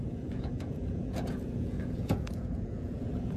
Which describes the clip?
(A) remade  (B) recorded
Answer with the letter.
A